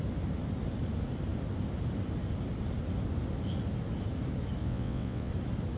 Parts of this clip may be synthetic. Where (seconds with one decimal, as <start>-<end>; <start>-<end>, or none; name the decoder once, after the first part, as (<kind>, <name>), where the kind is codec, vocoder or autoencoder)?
4.6-5.3 (vocoder, WaveNeXt)